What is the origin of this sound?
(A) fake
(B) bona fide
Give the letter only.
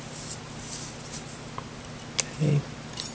B